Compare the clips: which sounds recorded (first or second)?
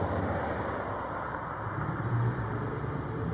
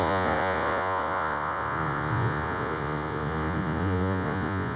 first